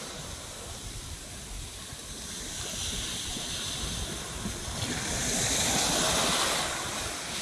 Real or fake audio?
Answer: fake